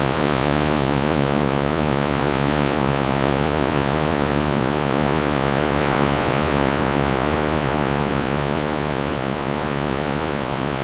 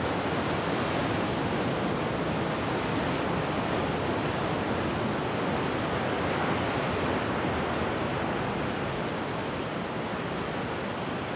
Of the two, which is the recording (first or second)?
second